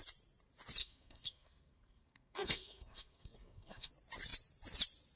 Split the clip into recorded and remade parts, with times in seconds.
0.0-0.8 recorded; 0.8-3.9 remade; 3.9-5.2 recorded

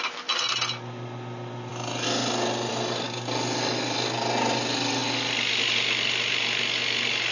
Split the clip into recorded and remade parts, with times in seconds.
0.0-7.3 recorded

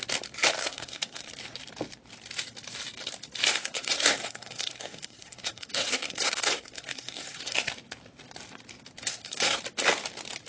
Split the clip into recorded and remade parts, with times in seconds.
0.0-0.6 recorded; 0.6-1.3 remade; 1.3-3.5 recorded; 3.5-7.7 remade; 7.7-9.1 recorded; 9.1-9.6 remade; 9.6-10.5 recorded

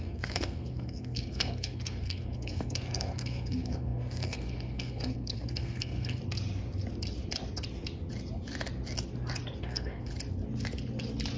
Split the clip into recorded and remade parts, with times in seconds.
0.0-6.2 remade; 6.2-9.6 recorded; 9.6-10.1 remade; 10.1-11.4 recorded

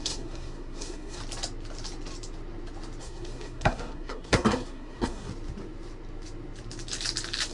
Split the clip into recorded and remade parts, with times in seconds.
0.0-1.2 remade; 1.2-3.0 recorded; 3.0-5.3 remade; 5.3-7.5 recorded

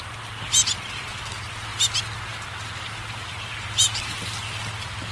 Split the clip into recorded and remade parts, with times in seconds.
0.0-5.1 recorded

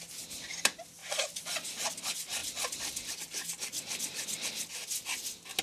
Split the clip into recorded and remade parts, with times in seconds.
0.0-5.6 recorded